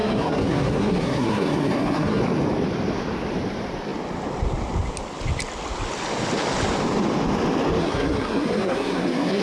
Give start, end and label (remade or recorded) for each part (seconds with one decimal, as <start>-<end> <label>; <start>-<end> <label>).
0.0-2.2 remade; 2.2-7.8 recorded; 7.8-9.4 remade